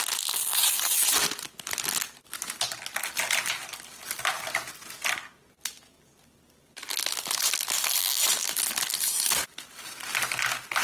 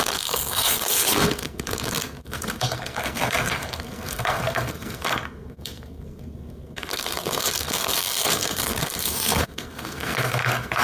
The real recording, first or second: first